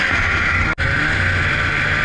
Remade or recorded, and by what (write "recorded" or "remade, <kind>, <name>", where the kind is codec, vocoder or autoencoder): recorded